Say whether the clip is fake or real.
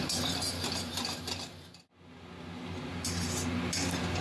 real